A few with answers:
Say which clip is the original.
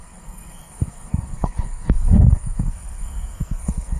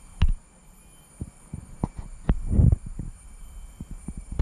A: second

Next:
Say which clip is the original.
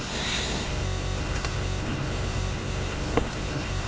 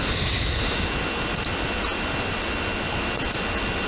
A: second